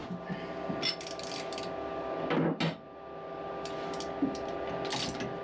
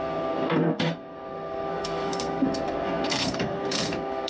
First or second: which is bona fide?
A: first